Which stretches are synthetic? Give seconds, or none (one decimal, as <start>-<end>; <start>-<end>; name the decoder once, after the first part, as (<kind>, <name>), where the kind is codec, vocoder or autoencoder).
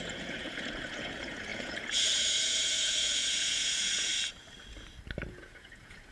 0.0-4.1 (vocoder, Vocos); 5.3-6.1